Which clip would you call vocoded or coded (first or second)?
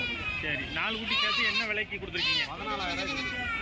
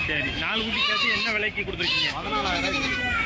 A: second